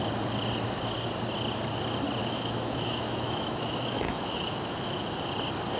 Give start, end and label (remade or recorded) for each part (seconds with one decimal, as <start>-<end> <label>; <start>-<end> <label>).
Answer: 0.0-2.2 recorded; 2.2-5.2 remade; 5.2-5.8 recorded